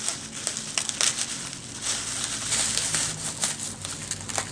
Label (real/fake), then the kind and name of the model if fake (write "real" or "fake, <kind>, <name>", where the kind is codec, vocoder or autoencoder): real